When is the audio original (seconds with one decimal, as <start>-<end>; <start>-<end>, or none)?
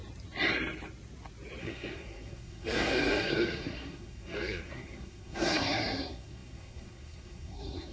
0.0-1.6